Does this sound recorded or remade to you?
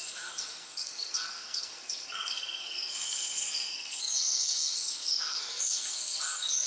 remade